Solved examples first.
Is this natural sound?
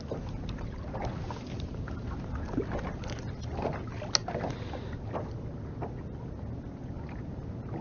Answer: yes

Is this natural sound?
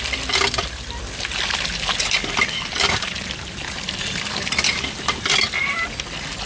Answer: yes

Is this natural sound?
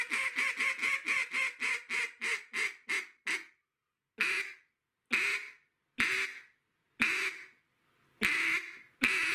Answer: yes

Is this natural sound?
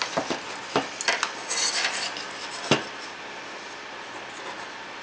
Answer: yes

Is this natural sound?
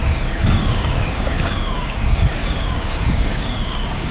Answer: no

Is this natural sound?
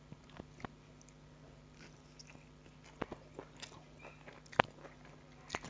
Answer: yes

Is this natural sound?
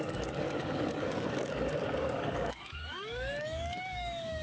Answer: no